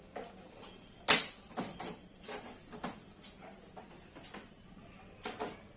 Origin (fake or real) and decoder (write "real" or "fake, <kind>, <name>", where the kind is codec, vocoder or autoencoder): fake, vocoder, BigVGAN v2